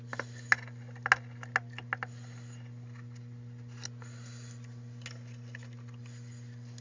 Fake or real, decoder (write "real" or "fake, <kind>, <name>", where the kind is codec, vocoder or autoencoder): real